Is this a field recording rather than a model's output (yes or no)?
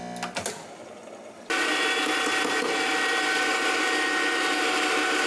yes